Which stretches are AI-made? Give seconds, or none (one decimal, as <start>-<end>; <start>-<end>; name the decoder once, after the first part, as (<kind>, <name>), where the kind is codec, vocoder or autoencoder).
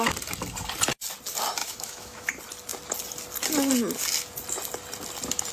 1.6-2.3 (autoencoder, DAC-VAE)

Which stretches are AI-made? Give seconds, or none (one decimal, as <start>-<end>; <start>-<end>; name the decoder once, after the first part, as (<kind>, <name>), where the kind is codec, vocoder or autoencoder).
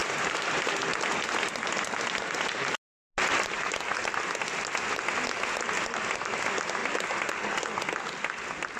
0.0-0.6 (vocoder, BigVGAN v2)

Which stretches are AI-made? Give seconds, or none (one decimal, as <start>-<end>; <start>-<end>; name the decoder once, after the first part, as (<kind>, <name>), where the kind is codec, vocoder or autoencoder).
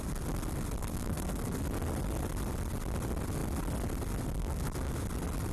0.8-1.6 (codec, SNAC); 4.4-4.9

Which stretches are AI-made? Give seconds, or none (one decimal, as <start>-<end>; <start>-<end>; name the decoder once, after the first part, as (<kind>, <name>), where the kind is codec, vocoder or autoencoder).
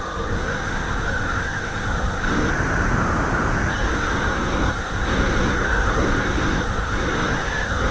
0.0-2.5 (codec, SNAC); 3.7-7.9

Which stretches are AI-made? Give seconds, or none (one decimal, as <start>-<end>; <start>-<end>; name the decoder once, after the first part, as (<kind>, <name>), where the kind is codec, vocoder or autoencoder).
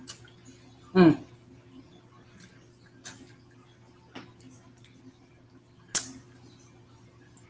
none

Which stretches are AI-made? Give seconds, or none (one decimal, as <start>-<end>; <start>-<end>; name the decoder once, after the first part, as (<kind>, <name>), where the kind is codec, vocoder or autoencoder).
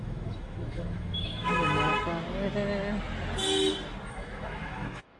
0.0-1.9 (autoencoder, DAC-VAE); 4.1-5.2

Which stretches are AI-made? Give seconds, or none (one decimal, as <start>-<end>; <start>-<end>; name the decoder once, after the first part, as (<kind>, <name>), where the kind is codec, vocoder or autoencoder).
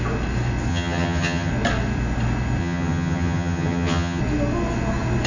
0.7-1.5 (vocoder, HiFi-GAN); 2.6-4.2